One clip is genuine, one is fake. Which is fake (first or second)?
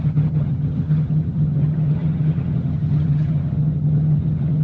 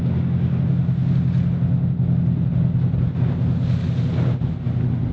first